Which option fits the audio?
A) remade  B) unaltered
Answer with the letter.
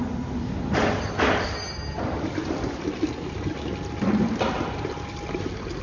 B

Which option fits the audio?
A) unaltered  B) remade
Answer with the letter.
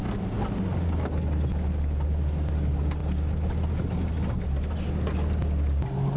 A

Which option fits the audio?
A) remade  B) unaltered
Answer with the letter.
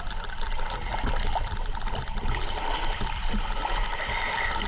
B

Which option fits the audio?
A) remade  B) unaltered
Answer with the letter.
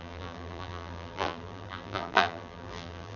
A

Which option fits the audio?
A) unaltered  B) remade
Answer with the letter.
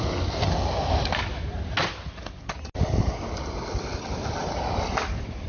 A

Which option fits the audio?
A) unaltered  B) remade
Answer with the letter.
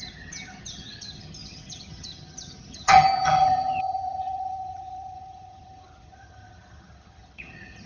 B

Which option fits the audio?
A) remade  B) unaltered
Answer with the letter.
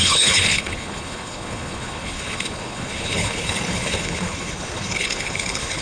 A